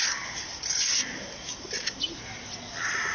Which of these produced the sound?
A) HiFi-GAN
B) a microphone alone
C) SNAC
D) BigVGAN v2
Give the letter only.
B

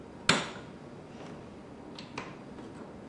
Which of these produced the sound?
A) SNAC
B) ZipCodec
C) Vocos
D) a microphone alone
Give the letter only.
D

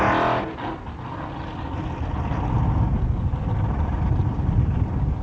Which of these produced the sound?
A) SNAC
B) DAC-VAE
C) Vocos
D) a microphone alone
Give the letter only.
D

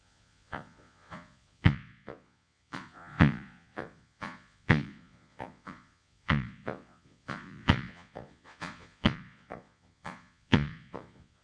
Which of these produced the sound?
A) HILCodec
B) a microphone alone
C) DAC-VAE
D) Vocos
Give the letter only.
D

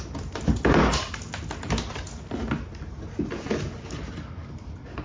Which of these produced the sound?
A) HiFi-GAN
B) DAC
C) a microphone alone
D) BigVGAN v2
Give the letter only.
C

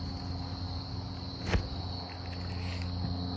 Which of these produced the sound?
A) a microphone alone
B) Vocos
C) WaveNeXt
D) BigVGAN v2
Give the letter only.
A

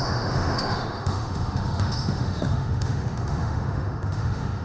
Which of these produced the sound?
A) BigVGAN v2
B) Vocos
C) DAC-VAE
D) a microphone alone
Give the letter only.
C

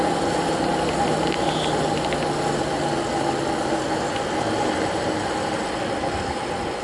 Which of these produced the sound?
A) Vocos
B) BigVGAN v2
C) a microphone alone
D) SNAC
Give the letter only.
C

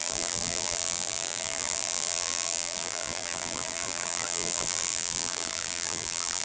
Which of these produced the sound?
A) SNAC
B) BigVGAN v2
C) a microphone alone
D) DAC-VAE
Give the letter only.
B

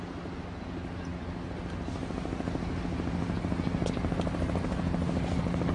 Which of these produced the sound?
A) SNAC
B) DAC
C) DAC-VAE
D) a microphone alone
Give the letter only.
D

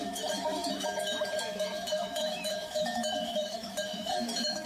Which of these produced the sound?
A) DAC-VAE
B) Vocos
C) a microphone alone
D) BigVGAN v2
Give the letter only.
A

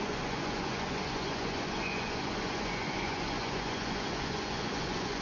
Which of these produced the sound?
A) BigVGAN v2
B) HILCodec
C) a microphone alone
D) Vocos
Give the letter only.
D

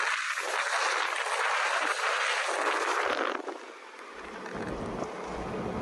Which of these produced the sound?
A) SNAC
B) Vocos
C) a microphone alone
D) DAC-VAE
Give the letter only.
C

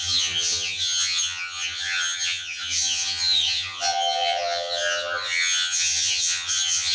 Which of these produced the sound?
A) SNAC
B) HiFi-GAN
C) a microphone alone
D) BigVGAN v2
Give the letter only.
B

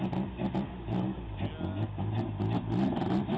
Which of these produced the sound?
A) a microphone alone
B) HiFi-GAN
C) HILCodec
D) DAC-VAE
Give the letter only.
A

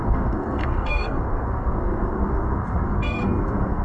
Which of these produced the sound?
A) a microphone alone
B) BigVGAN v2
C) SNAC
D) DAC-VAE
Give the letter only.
C